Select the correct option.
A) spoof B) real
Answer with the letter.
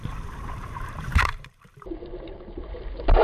A